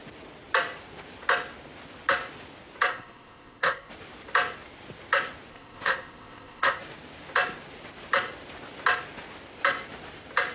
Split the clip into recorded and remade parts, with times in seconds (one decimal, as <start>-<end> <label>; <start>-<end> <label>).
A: 0.0-2.9 recorded; 2.9-3.9 remade; 3.9-5.5 recorded; 5.5-6.8 remade; 6.8-10.5 recorded